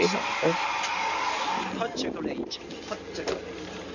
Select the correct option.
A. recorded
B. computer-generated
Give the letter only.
A